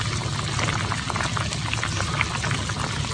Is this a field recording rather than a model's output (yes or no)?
yes